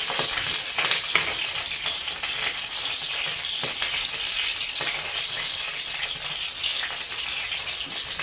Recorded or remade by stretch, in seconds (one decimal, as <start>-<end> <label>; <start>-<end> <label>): 0.0-8.2 recorded